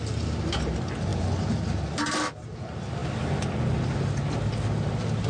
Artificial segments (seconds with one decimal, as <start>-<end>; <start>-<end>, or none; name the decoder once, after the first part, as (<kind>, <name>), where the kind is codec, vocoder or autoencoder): none